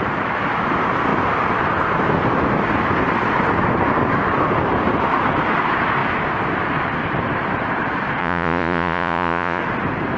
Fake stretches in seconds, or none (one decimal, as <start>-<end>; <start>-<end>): 8.2-9.6